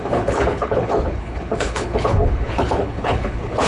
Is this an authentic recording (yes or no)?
no